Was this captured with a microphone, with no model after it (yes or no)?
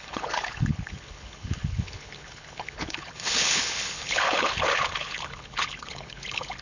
no